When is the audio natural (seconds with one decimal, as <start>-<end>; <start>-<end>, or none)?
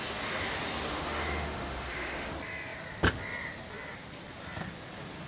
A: 0.0-0.9; 2.3-5.3